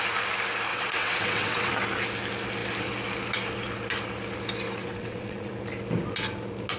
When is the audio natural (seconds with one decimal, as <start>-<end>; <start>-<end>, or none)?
0.0-0.7; 1.7-4.8; 5.5-6.8